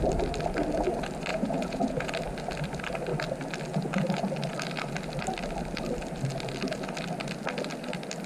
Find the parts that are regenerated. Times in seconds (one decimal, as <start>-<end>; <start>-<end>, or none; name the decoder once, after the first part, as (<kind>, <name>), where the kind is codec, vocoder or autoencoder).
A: 1.3-2.1 (vocoder, Vocos)

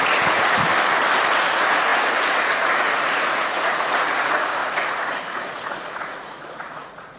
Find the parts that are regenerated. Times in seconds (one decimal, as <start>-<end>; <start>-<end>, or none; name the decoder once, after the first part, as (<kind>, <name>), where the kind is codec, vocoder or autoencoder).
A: 0.0-0.7 (vocoder, Vocos); 1.3-7.2